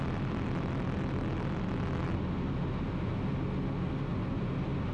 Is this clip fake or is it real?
real